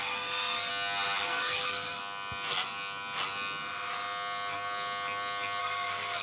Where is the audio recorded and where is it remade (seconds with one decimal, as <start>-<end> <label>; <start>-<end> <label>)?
0.0-0.7 remade; 0.7-1.2 recorded; 1.2-2.0 remade; 2.0-5.6 recorded; 5.6-6.2 remade